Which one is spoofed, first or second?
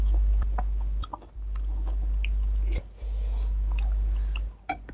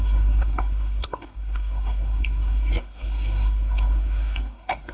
second